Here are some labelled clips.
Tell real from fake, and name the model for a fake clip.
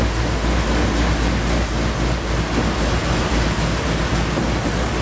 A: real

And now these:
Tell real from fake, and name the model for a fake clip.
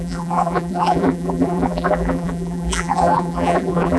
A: fake, vocoder, BigVGAN v2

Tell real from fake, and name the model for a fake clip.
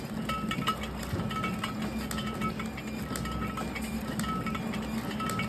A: real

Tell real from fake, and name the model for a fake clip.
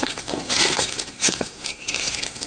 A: fake, codec, SNAC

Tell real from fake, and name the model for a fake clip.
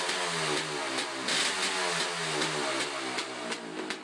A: real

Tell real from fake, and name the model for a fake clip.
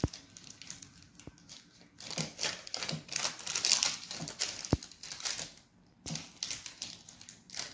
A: real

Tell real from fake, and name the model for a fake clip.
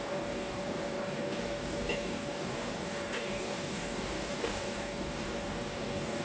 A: fake, codec, DAC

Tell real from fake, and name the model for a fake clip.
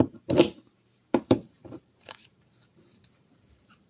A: fake, vocoder, BigVGAN v2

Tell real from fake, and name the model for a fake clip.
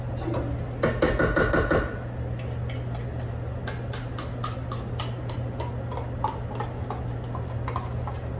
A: real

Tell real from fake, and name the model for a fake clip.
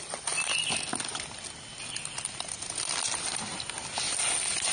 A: real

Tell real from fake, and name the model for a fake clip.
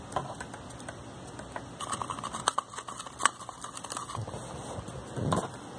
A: real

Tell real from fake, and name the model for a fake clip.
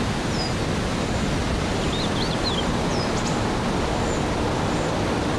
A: real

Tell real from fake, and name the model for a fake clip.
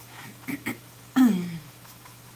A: fake, autoencoder, DAC-VAE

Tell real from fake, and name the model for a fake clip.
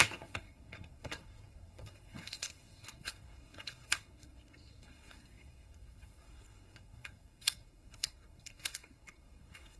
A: fake, codec, SNAC